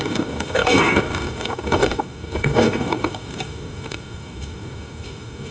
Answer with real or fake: fake